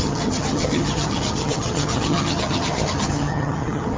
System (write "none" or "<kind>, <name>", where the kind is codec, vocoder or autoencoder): vocoder, HiFi-GAN